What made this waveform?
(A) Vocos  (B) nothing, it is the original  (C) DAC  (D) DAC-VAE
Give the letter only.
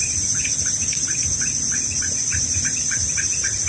B